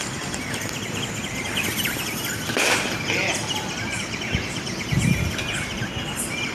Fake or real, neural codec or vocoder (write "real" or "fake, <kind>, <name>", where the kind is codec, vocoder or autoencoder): real